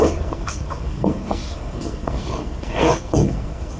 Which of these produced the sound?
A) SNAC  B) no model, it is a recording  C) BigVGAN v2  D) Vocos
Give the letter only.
A